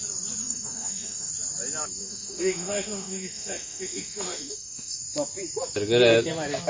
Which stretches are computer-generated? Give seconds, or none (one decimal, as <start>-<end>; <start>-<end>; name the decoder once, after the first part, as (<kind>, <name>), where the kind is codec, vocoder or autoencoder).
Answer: 0.4-1.3 (autoencoder, DAC-VAE); 2.0-5.0